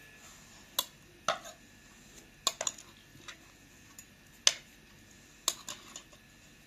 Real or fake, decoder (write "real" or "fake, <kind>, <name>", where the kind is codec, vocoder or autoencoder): real